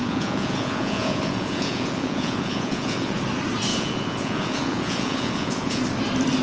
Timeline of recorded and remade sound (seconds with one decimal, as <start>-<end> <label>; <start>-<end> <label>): 0.0-3.2 remade; 3.2-3.7 recorded; 3.7-5.8 remade; 5.8-6.4 recorded